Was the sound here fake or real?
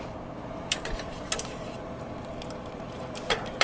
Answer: fake